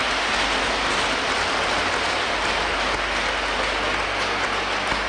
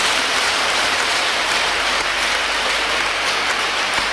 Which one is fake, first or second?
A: second